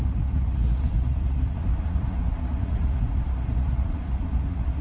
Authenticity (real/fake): fake